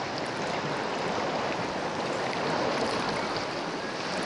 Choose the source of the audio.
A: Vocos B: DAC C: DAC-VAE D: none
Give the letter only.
D